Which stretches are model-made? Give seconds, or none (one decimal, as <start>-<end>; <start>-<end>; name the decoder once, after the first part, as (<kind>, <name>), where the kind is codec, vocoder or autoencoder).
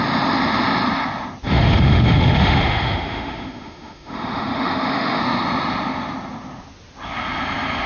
1.5-5.2 (autoencoder, DAC-VAE)